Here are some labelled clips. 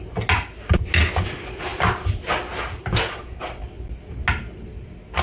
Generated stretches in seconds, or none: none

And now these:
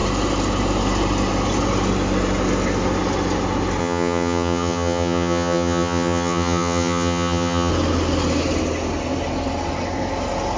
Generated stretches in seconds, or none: 3.8-7.7 (vocoder, HiFi-GAN)

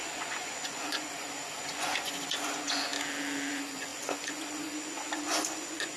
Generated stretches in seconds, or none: 0.0-2.9 (vocoder, Vocos); 3.5-6.0

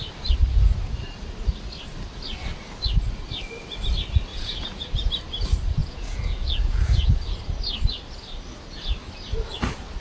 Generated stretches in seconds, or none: 4.3-5.1 (vocoder, Vocos); 5.8-7.2